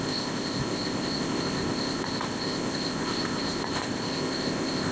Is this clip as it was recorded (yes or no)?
no